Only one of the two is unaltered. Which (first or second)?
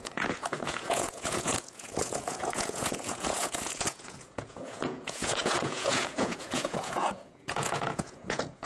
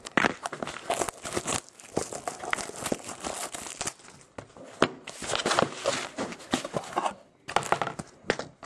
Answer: second